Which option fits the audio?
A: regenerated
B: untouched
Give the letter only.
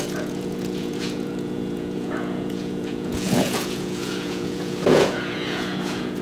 A